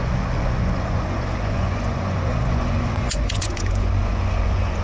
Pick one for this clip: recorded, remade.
remade